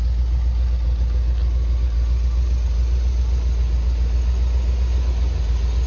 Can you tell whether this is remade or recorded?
recorded